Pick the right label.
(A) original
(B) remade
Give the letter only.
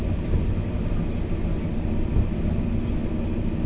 A